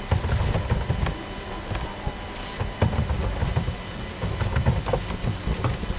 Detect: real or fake real